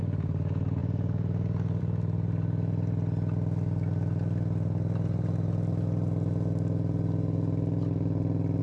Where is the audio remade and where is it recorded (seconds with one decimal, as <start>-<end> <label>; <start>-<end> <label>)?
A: 0.0-0.8 recorded; 0.8-1.8 remade; 1.8-8.6 recorded